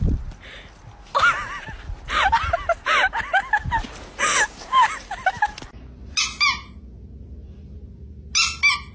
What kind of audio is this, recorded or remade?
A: recorded